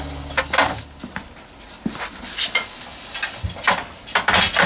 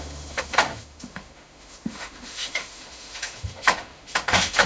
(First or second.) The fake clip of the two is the second